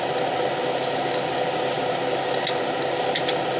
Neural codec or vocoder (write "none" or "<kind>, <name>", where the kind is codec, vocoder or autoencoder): none